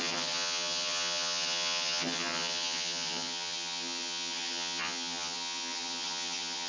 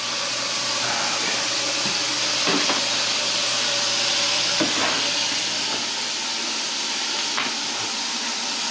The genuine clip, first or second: second